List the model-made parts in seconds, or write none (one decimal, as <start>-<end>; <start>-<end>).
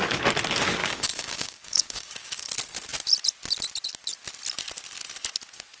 0.8-2.5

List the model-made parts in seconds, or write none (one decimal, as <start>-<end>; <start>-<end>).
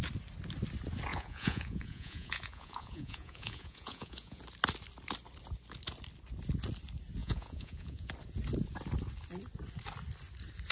1.1-4.4; 7.2-8.1